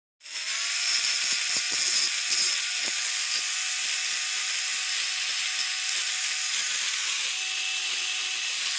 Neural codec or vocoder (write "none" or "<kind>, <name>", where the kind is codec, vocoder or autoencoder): none